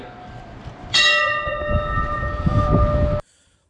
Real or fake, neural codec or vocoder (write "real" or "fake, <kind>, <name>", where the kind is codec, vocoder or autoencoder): real